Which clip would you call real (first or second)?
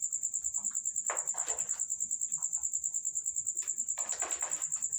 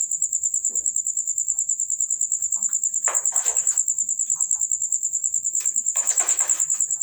first